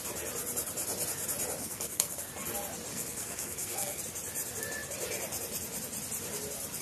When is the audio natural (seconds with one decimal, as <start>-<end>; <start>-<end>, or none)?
0.0-1.6; 2.3-2.9; 4.0-6.8